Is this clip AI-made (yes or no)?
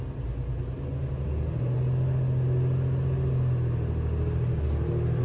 no